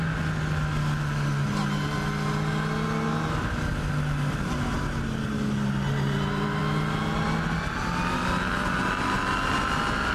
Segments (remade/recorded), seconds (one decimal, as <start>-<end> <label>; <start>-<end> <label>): 0.0-10.1 recorded

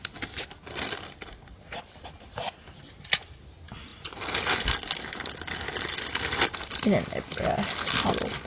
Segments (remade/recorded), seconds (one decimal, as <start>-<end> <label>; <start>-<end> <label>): 0.0-8.5 recorded

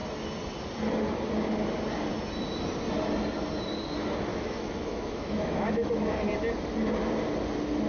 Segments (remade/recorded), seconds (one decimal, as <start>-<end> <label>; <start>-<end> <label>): 0.0-4.3 recorded; 4.3-6.2 remade; 6.2-7.9 recorded